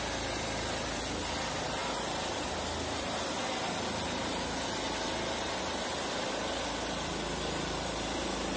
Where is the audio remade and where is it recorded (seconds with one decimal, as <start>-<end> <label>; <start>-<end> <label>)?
0.0-8.6 recorded